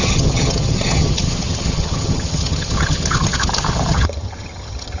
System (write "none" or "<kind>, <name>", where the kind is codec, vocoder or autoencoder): vocoder, HiFi-GAN